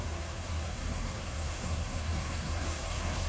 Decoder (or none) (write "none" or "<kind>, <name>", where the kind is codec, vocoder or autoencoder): codec, SNAC